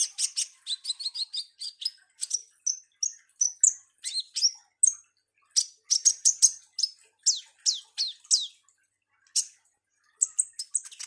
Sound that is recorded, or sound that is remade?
recorded